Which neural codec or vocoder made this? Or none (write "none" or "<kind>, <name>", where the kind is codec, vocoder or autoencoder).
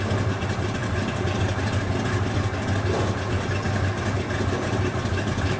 none